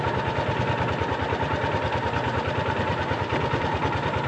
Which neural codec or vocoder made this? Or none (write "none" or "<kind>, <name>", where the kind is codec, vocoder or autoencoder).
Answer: none